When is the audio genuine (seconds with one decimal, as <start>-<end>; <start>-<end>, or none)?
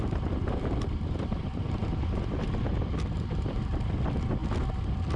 1.8-2.6; 4.4-5.2